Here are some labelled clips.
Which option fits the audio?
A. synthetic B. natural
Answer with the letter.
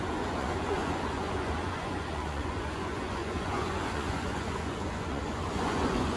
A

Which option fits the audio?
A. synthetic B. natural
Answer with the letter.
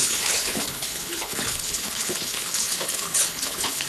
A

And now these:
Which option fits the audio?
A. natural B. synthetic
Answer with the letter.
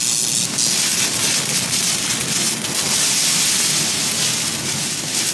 A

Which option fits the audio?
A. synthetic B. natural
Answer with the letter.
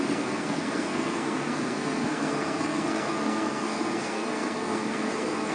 A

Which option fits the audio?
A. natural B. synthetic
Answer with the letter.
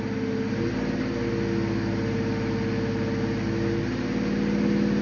A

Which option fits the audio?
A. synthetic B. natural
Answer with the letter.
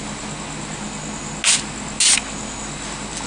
B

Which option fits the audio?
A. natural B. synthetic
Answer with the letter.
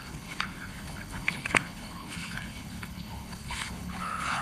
B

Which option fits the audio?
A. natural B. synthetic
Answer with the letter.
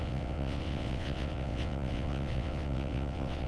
B